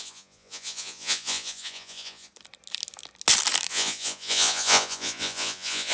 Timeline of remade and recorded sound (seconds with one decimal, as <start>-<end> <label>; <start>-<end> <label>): 0.0-2.3 remade; 2.3-3.7 recorded; 3.7-5.9 remade